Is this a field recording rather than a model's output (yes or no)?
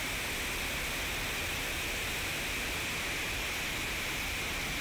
yes